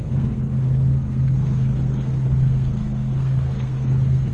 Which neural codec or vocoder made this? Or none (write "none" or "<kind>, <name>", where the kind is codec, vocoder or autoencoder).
codec, SNAC